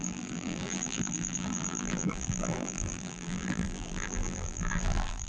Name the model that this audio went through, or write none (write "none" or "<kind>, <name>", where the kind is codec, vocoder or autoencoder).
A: vocoder, BigVGAN v2